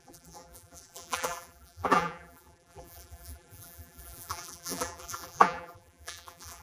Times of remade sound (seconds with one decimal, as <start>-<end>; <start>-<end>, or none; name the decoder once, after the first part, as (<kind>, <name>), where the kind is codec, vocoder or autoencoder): 0.0-6.6 (vocoder, BigVGAN v2)